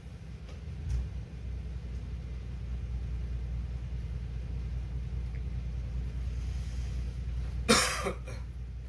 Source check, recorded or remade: recorded